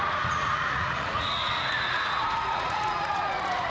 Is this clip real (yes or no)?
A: no